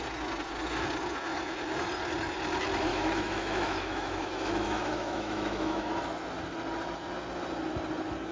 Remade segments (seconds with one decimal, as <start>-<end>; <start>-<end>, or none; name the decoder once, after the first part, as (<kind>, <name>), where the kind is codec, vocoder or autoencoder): 2.9-5.9 (autoencoder, DAC-VAE)